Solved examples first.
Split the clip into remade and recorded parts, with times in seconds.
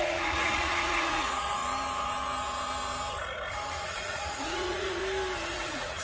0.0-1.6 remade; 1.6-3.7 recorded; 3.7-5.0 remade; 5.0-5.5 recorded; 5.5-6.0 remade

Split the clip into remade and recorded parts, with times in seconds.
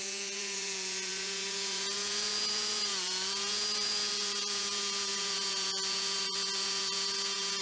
0.0-7.6 remade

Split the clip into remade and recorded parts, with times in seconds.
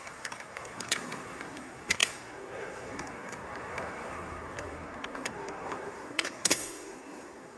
0.0-7.6 remade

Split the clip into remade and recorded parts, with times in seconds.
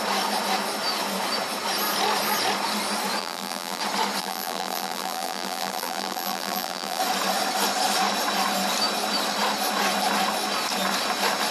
0.0-3.2 recorded; 3.2-3.8 remade; 3.8-4.2 recorded; 4.2-7.0 remade; 7.0-11.5 recorded